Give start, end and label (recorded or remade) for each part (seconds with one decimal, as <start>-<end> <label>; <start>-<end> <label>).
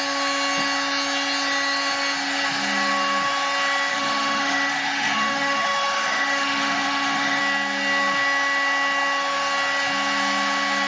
0.0-3.9 recorded; 3.9-7.4 remade; 7.4-10.9 recorded